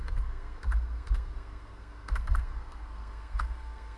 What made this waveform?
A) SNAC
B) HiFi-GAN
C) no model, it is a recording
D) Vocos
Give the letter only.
A